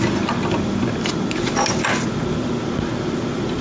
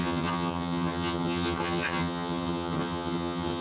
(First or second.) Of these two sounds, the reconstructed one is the second